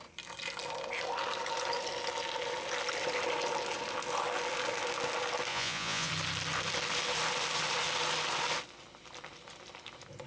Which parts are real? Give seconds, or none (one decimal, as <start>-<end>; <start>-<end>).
0.0-5.5; 6.1-10.3